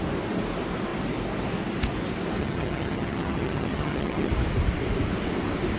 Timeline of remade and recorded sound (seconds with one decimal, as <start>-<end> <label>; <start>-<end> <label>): 0.0-2.4 recorded; 2.4-4.3 remade; 4.3-5.8 recorded